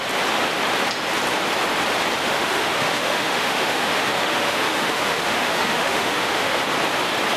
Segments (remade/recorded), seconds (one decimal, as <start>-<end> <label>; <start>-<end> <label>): 0.0-2.2 recorded; 2.2-6.6 remade; 6.6-7.4 recorded